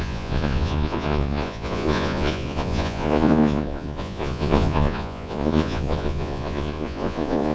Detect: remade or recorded remade